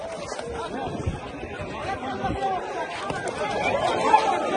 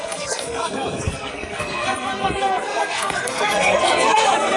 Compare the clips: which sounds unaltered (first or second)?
first